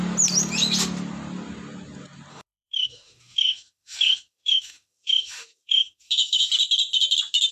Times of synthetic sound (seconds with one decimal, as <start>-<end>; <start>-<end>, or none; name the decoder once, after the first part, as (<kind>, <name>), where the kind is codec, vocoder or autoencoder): 2.3-6.5 (autoencoder, DAC-VAE)